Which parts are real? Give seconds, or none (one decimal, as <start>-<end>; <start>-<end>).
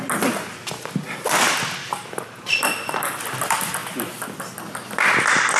0.0-1.8; 3.2-3.8; 4.4-5.6